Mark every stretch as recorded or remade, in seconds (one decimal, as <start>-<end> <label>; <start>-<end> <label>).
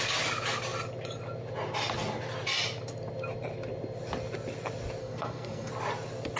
0.0-5.0 recorded; 5.0-5.7 remade; 5.7-6.4 recorded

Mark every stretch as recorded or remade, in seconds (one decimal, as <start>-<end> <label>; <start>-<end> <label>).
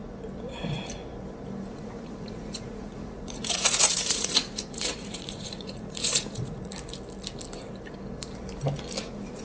0.0-0.6 recorded; 0.6-1.0 remade; 1.0-1.7 recorded; 1.7-6.7 remade; 6.7-9.0 recorded; 9.0-9.4 remade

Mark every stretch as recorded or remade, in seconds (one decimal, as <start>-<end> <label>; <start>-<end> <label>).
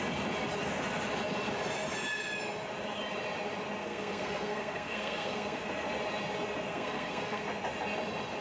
0.0-3.8 recorded; 3.8-5.6 remade; 5.6-6.7 recorded; 6.7-7.4 remade; 7.4-8.4 recorded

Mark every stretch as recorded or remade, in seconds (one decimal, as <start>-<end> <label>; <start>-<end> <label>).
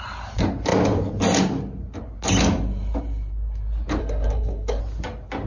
0.0-4.0 recorded; 4.0-4.8 remade; 4.8-5.5 recorded